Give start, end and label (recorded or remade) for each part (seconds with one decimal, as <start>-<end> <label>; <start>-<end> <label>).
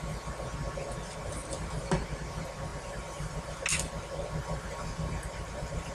0.0-2.7 recorded; 2.7-3.6 remade; 3.6-4.4 recorded; 4.4-5.9 remade